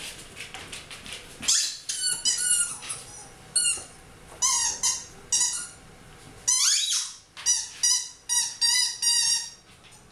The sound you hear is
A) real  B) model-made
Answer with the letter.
A